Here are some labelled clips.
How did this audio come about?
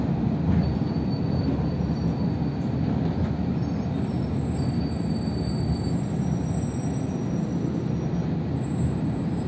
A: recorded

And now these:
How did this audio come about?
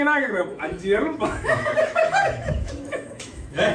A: remade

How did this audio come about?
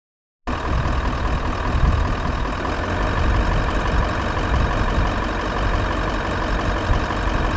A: recorded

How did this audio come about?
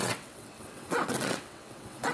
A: remade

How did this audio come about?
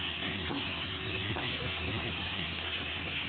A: remade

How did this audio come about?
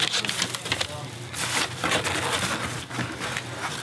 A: recorded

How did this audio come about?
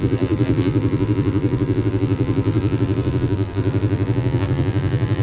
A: remade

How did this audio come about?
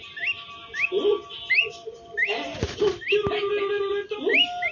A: recorded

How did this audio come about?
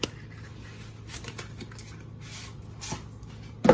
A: recorded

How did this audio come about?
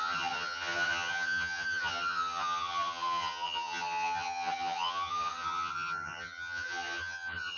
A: remade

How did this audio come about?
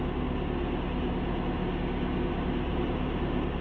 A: recorded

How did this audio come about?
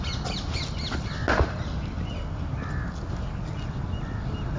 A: recorded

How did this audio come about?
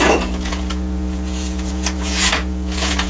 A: remade